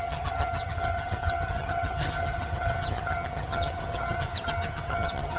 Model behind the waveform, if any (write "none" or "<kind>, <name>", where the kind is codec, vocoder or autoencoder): vocoder, HiFi-GAN